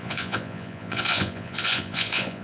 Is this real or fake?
fake